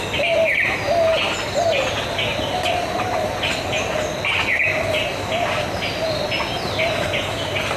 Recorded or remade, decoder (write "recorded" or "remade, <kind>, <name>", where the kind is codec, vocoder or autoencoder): recorded